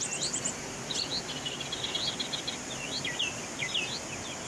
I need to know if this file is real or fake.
real